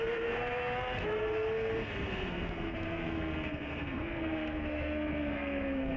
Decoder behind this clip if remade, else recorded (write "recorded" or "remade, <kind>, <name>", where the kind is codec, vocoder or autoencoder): remade, codec, SNAC